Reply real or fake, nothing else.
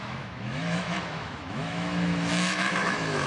fake